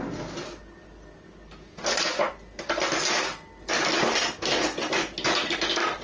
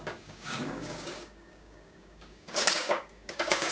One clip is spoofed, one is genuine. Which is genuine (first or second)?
first